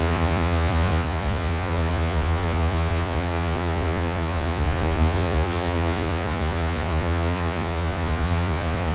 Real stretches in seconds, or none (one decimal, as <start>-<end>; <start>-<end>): none